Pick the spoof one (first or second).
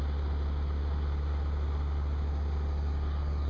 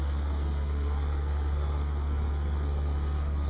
second